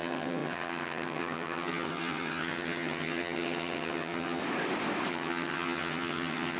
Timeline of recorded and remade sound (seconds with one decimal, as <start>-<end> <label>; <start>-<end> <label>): 0.0-4.4 remade; 4.4-5.1 recorded; 5.1-6.6 remade